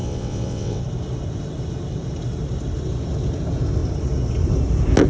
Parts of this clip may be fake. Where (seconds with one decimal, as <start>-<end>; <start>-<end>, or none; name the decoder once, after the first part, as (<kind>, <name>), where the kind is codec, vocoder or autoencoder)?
0.0-0.8 (vocoder, WaveNeXt)